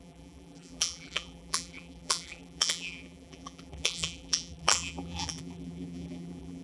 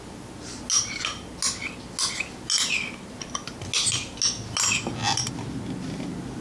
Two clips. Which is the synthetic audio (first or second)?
first